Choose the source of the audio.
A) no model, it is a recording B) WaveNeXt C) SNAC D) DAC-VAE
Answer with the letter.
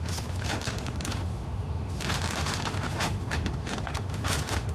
D